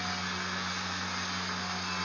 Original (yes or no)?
yes